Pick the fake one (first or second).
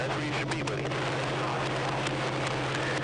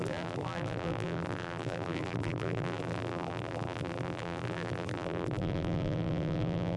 second